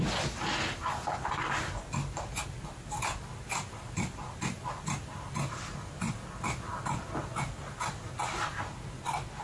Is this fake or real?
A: real